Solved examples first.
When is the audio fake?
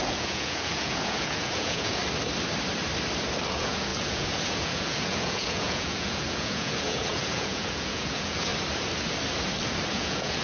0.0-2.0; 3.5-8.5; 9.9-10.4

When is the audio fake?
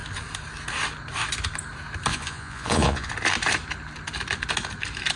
2.1-3.1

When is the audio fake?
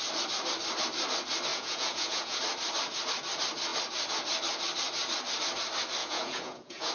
1.5-2.4; 6.0-6.9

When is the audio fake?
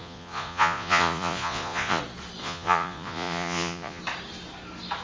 0.0-2.0; 2.4-4.0